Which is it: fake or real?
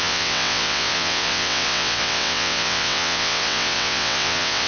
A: fake